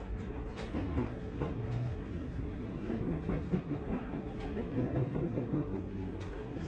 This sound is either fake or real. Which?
fake